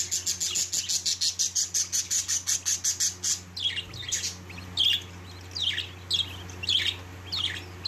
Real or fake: real